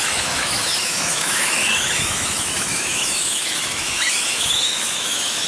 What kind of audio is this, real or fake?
fake